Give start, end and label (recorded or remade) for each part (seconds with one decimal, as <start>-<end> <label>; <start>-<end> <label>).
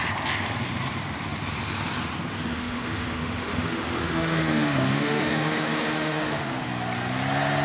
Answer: 0.0-2.5 recorded; 2.5-6.7 remade; 6.7-7.6 recorded